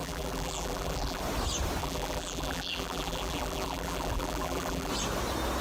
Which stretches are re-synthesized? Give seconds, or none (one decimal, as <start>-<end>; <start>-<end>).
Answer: 0.0-1.2; 1.8-4.9